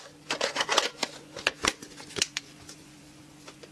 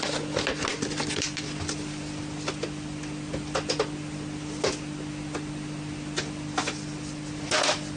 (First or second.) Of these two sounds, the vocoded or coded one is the first